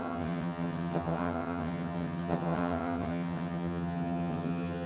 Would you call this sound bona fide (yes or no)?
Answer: no